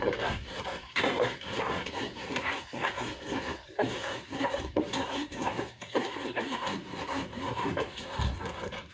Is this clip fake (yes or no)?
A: yes